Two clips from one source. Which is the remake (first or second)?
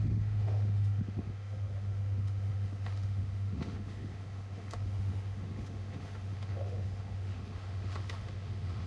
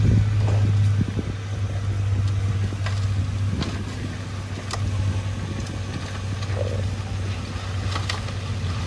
first